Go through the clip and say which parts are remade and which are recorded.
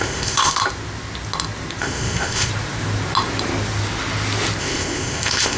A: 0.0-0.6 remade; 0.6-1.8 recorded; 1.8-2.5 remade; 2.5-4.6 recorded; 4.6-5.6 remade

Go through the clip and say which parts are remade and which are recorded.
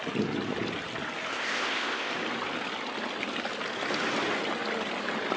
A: 0.0-1.3 recorded; 1.3-2.1 remade; 2.1-5.4 recorded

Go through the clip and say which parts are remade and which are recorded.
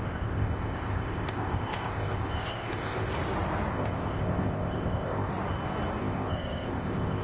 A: 0.0-3.1 remade; 3.1-3.7 recorded; 3.7-5.3 remade; 5.3-6.0 recorded; 6.0-7.2 remade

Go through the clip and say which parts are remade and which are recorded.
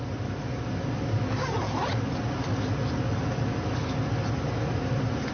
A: 0.0-5.3 recorded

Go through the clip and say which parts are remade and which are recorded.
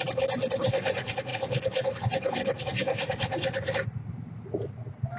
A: 0.0-5.2 recorded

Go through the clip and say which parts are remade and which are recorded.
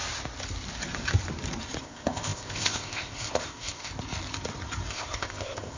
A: 0.0-1.8 recorded; 1.8-3.9 remade; 3.9-4.9 recorded; 4.9-5.8 remade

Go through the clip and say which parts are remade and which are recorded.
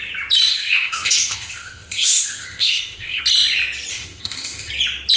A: 0.0-0.5 recorded; 0.5-3.2 remade; 3.2-3.9 recorded; 3.9-4.7 remade; 4.7-5.2 recorded